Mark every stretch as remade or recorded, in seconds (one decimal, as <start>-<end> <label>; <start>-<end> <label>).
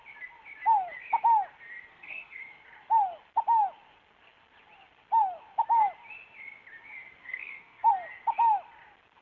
0.0-1.9 recorded; 1.9-2.4 remade; 2.4-7.2 recorded; 7.2-7.9 remade; 7.9-9.2 recorded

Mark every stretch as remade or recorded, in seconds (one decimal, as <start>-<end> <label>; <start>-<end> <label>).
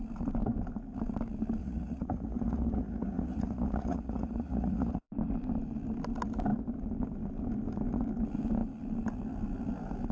0.0-1.6 recorded; 1.6-5.0 remade; 5.0-10.1 recorded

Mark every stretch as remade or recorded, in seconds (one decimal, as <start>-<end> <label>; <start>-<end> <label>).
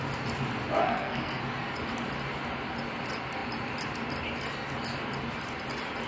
0.0-0.8 recorded; 0.8-1.4 remade; 1.4-6.1 recorded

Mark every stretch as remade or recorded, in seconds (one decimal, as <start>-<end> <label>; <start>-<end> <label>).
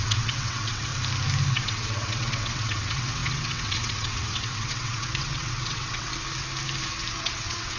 0.0-0.9 remade; 0.9-1.5 recorded; 1.5-6.1 remade; 6.1-7.2 recorded; 7.2-7.8 remade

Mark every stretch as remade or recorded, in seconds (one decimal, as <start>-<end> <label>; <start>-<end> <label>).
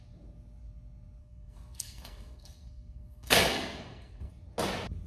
0.0-1.2 recorded; 1.2-4.3 remade; 4.3-5.1 recorded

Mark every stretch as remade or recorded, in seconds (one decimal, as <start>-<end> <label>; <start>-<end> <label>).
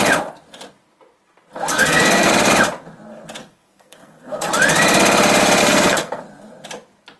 0.0-1.7 recorded; 1.7-2.3 remade; 2.3-3.4 recorded; 3.4-4.5 remade; 4.5-5.6 recorded; 5.6-6.2 remade; 6.2-7.2 recorded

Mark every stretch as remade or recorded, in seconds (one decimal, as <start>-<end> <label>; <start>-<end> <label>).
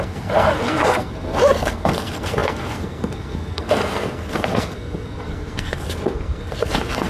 0.0-7.1 remade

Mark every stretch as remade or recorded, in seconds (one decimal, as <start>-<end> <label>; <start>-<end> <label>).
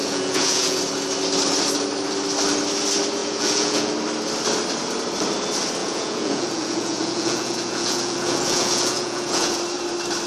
0.0-0.8 remade; 0.8-3.2 recorded; 3.2-3.9 remade; 3.9-5.8 recorded; 5.8-9.6 remade; 9.6-10.3 recorded